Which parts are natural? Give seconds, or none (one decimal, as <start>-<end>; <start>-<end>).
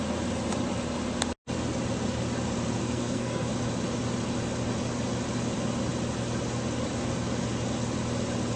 0.0-2.8; 3.5-8.6